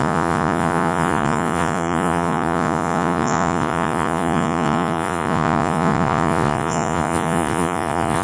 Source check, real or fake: fake